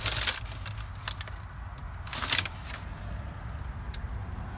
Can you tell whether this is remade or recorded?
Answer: recorded